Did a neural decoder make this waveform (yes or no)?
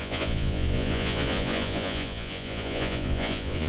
yes